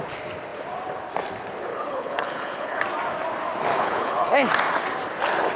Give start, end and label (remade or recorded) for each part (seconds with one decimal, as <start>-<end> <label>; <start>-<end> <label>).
0.0-1.7 recorded; 1.7-2.8 remade; 2.8-3.7 recorded; 3.7-4.4 remade; 4.4-5.6 recorded

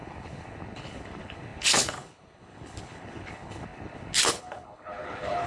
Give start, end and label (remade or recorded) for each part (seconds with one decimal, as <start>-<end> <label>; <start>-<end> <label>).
0.0-5.5 remade

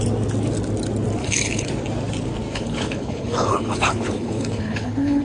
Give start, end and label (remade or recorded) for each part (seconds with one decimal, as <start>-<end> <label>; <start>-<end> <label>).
0.0-1.2 recorded; 1.2-1.7 remade; 1.7-2.5 recorded; 2.5-5.2 remade

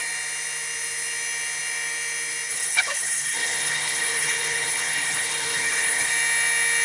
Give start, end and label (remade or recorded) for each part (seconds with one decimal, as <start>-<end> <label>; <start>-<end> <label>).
0.0-2.5 recorded; 2.5-6.1 remade; 6.1-6.8 recorded

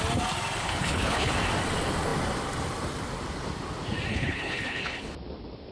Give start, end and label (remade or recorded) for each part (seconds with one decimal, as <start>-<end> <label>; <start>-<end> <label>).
0.0-0.6 recorded; 0.6-1.3 remade; 1.3-4.1 recorded; 4.1-5.1 remade; 5.1-5.7 recorded

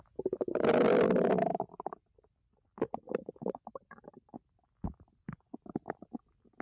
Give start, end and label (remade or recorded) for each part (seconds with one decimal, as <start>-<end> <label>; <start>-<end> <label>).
0.0-6.6 recorded